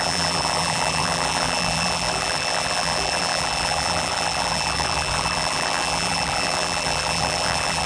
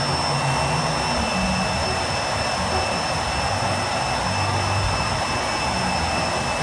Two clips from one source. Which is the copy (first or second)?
first